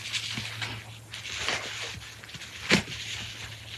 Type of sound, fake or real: real